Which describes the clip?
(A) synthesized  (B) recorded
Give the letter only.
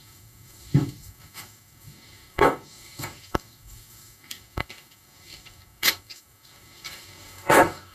A